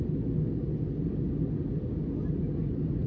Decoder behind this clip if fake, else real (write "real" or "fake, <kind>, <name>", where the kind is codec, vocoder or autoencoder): real